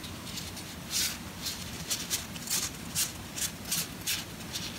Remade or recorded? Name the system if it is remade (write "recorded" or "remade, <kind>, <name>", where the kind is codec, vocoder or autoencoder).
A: recorded